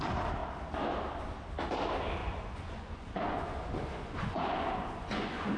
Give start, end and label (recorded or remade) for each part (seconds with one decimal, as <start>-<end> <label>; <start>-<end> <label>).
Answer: 0.0-2.2 recorded; 2.2-5.6 remade